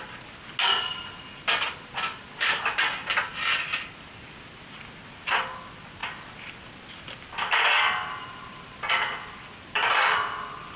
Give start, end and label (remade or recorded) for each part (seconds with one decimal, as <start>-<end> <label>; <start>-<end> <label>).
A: 0.0-10.8 recorded